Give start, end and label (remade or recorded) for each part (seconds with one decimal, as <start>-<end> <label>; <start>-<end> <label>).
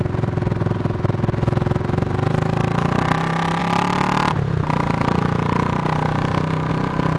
0.0-7.2 recorded